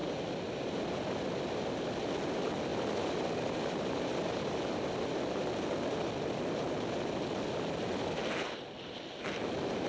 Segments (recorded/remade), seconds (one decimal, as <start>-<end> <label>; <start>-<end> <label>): 0.0-9.9 recorded